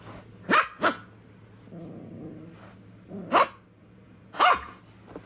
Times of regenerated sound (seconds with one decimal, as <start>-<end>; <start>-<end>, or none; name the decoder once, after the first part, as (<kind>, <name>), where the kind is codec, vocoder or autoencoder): 3.8-4.8 (vocoder, Vocos)